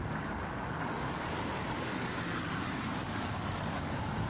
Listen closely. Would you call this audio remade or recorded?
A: remade